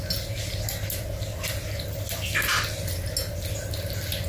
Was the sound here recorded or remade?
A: recorded